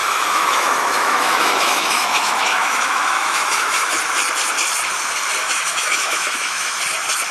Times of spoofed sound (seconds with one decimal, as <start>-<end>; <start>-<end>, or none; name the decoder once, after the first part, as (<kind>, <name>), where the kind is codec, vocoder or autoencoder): 0.0-3.9 (autoencoder, DAC-VAE); 5.4-6.8